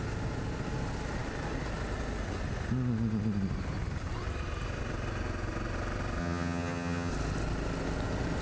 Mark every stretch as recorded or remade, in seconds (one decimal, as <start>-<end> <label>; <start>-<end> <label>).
0.0-6.2 recorded; 6.2-7.1 remade; 7.1-8.4 recorded